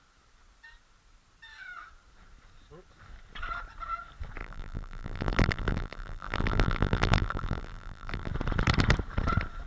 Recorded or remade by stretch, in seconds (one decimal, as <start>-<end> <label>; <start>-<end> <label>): 0.0-4.4 recorded; 4.4-8.3 remade; 8.3-9.7 recorded